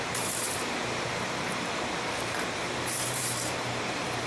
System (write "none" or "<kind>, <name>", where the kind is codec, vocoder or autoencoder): vocoder, BigVGAN v2